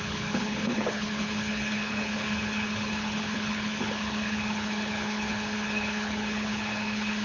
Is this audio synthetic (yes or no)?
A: yes